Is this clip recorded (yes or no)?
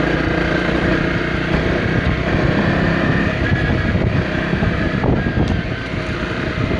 yes